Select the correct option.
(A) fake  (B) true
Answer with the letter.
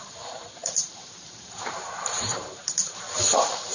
A